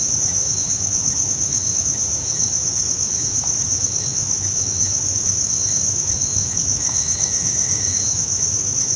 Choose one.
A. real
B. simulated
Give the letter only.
B